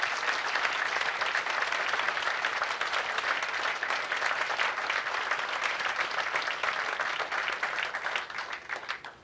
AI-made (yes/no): no